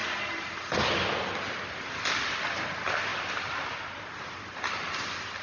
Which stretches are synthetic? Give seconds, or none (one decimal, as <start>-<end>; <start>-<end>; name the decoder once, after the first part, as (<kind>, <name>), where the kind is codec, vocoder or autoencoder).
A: 3.1-5.0 (vocoder, BigVGAN v2)